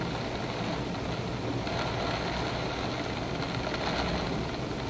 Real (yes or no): yes